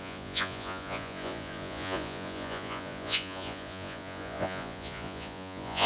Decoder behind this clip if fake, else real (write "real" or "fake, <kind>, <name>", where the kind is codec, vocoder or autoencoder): fake, vocoder, Vocos